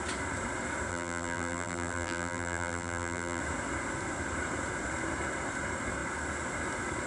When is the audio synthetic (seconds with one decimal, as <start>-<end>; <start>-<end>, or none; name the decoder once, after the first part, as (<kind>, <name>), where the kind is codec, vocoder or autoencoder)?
0.9-3.4 (vocoder, BigVGAN v2)